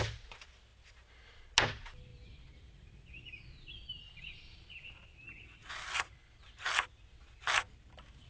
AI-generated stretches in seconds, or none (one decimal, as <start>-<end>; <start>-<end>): 2.1-3.4